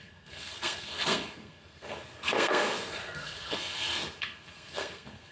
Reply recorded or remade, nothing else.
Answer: remade